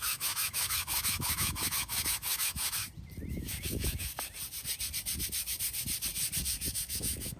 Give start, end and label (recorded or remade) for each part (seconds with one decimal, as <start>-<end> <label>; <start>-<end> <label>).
0.0-2.8 remade; 2.8-3.3 recorded; 3.3-4.1 remade; 4.1-6.4 recorded; 6.4-7.4 remade